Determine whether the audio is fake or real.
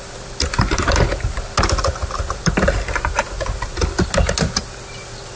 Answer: real